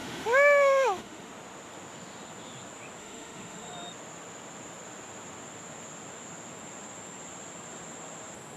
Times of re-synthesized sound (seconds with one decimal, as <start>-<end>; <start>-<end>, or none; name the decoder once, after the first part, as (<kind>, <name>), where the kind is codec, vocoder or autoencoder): 0.0-1.3 (autoencoder, DAC-VAE); 3.0-3.7